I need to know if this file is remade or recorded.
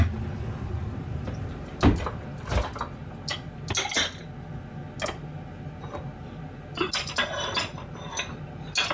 recorded